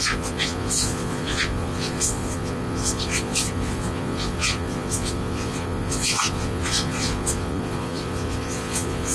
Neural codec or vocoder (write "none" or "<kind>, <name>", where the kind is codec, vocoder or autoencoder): vocoder, Vocos